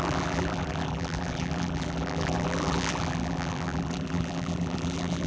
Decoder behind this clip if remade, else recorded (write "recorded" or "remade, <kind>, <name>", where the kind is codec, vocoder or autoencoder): remade, vocoder, BigVGAN v2